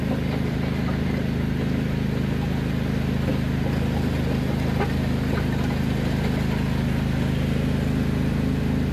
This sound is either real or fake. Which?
real